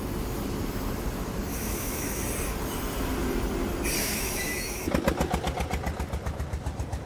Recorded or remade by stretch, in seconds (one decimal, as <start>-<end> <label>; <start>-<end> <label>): 0.0-1.5 recorded; 1.5-2.2 remade; 2.2-4.0 recorded; 4.0-4.9 remade; 4.9-7.1 recorded